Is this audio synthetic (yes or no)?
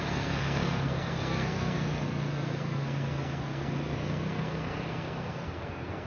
yes